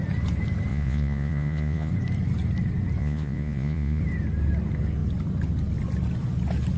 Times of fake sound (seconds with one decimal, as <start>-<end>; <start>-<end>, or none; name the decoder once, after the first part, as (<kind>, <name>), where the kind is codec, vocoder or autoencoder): 0.7-1.9 (vocoder, Vocos); 3.0-4.0